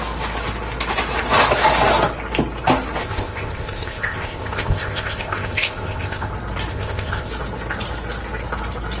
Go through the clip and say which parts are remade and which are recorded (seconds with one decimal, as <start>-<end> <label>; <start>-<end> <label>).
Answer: 0.0-3.0 recorded; 3.0-6.3 remade; 6.3-6.7 recorded; 6.7-7.3 remade; 7.3-9.0 recorded